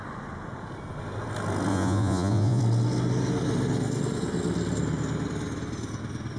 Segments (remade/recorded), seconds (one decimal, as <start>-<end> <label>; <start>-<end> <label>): 0.0-1.7 recorded; 1.7-2.6 remade; 2.6-6.4 recorded